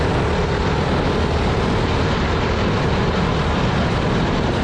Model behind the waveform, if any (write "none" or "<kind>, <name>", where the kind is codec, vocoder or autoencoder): none